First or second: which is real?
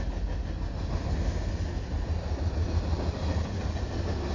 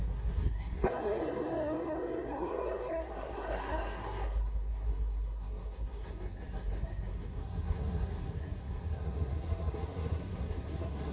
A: first